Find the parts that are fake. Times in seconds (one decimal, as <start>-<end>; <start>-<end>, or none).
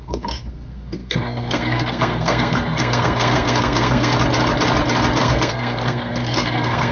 0.0-4.1; 5.2-6.9